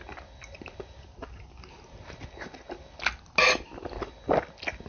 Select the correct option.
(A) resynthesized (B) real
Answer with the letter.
B